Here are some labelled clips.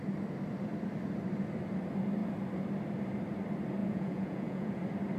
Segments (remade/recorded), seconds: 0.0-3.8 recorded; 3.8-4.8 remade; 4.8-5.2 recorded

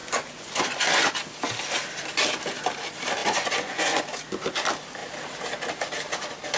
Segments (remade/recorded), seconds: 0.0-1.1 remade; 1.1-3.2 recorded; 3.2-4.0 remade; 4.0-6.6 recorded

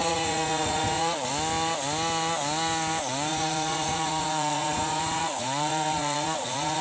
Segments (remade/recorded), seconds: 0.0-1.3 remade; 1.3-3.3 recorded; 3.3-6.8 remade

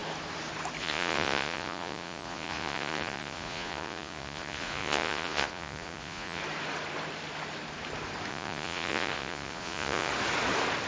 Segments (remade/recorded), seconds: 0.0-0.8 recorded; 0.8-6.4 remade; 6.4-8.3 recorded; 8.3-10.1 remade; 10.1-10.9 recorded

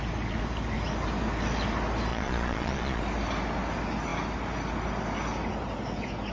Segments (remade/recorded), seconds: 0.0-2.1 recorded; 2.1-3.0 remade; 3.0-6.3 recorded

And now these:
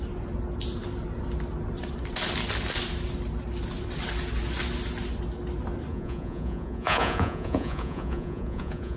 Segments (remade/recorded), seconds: 0.0-5.9 recorded; 5.9-9.0 remade

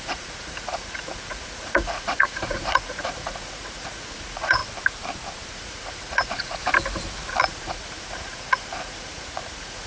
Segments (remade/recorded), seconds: 0.0-4.6 remade; 4.6-5.5 recorded; 5.5-6.6 remade; 6.6-7.4 recorded; 7.4-9.9 remade

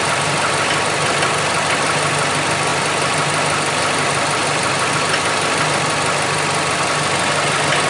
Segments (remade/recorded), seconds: 0.0-7.9 recorded